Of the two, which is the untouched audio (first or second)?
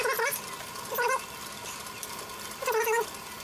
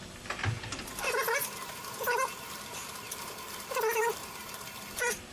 first